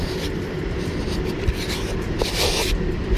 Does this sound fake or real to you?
fake